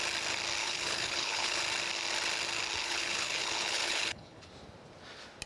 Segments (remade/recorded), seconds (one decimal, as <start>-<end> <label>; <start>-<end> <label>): 0.0-0.6 recorded; 0.6-1.6 remade; 1.6-2.8 recorded; 2.8-4.5 remade; 4.5-5.5 recorded